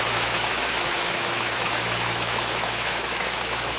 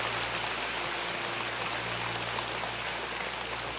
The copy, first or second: first